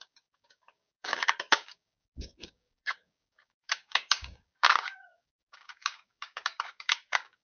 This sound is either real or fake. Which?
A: fake